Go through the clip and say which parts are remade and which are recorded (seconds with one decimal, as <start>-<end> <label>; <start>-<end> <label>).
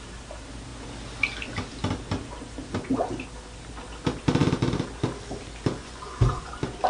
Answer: 0.0-5.8 recorded; 5.8-6.5 remade; 6.5-6.9 recorded